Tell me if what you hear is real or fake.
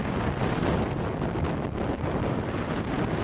real